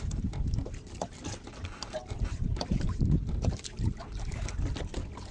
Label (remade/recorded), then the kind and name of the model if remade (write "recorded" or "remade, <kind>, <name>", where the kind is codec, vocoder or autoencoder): recorded